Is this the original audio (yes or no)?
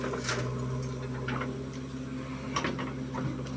yes